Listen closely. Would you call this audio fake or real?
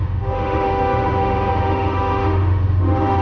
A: fake